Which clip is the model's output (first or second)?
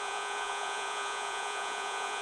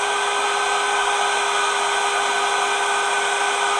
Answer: first